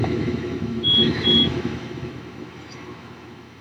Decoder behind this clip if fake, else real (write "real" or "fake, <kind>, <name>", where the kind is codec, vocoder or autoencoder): fake, autoencoder, DAC-VAE